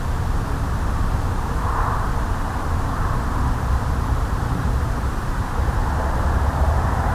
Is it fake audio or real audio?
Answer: fake